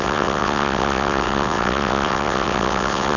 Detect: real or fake fake